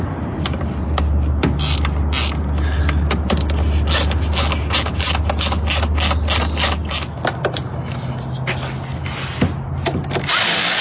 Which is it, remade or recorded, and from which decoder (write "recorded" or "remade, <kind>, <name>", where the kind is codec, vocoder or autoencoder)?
recorded